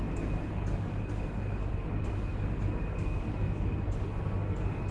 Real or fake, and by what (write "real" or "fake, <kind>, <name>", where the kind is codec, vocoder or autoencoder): fake, codec, SNAC